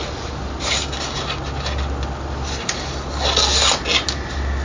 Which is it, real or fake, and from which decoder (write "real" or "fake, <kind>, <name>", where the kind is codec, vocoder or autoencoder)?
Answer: real